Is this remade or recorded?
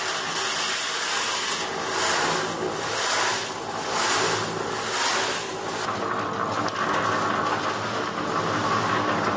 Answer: recorded